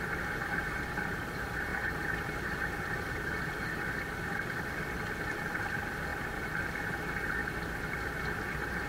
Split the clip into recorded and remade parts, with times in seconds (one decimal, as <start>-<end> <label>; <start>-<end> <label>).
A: 0.0-1.7 recorded; 1.7-3.8 remade; 3.8-8.9 recorded